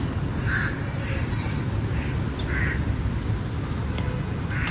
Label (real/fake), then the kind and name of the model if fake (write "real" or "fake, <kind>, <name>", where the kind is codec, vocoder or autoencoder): real